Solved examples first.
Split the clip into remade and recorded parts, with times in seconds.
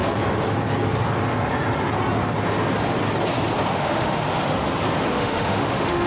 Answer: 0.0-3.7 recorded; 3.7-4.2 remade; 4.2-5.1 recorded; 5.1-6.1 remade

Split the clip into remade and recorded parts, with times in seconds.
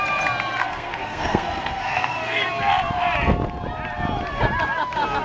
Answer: 0.0-0.6 recorded; 0.6-2.4 remade; 2.4-5.2 recorded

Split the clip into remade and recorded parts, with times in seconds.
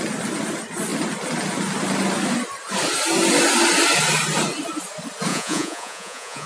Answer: 0.0-5.3 recorded; 5.3-6.5 remade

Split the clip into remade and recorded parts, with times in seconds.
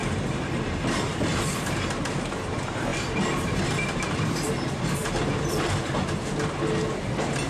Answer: 0.0-0.8 remade; 0.8-2.9 recorded; 2.9-5.9 remade; 5.9-7.5 recorded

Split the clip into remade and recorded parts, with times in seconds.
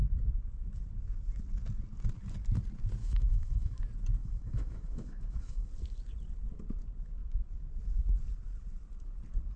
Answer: 0.0-3.0 recorded; 3.0-3.8 remade; 3.8-4.2 recorded; 4.2-5.7 remade; 5.7-9.6 recorded